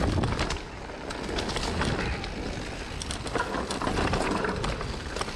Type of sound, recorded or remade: recorded